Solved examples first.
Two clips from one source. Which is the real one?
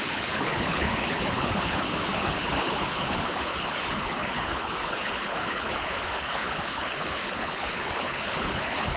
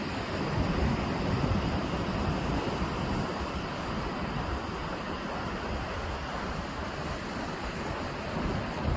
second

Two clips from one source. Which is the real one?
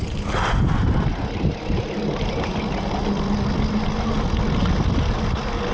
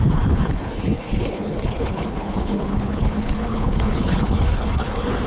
first